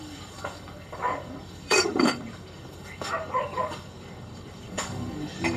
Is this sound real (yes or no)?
no